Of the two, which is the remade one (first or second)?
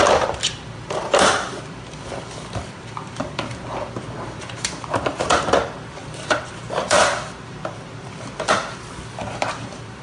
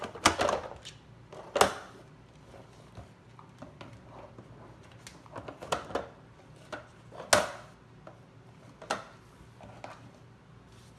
first